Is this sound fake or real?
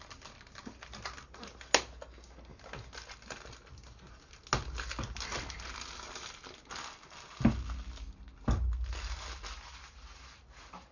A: real